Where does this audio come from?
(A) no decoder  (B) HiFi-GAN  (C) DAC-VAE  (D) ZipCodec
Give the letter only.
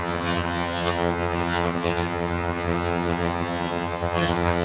B